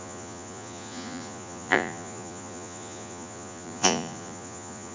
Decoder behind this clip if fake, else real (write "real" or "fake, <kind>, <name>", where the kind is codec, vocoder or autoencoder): fake, vocoder, Vocos